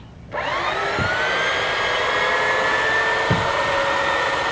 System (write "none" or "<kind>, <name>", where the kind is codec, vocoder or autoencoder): none